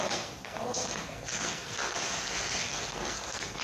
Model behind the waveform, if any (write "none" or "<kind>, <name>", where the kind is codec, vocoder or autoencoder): codec, SNAC